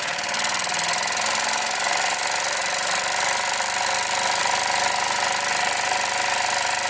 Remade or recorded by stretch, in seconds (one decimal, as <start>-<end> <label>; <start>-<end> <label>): 0.0-2.6 recorded; 2.6-4.4 remade; 4.4-6.9 recorded

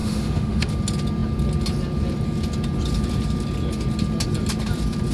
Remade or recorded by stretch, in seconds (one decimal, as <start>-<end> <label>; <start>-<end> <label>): 0.0-0.7 remade; 0.7-5.1 recorded

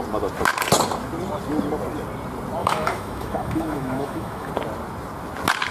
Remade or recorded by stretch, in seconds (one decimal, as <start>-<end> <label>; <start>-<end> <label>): 0.0-2.6 recorded; 2.6-4.5 remade; 4.5-5.7 recorded

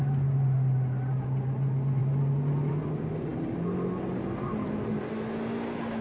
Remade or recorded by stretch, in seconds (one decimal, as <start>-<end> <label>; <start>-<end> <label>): 0.0-6.0 recorded

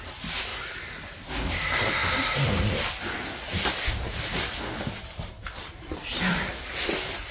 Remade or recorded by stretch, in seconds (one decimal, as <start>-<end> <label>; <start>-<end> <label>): 0.0-2.0 recorded; 2.0-6.4 remade; 6.4-7.3 recorded